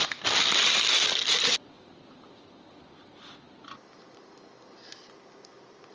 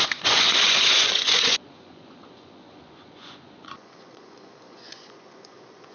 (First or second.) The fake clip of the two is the second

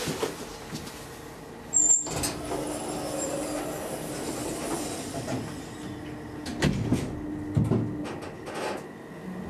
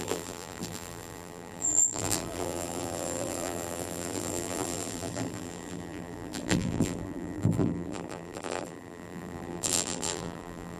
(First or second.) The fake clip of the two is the second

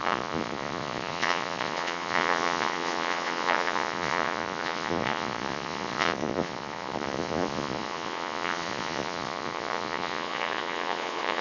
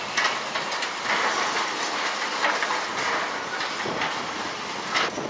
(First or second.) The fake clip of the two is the first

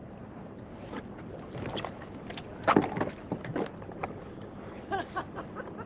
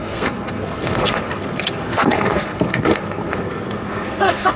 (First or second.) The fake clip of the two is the second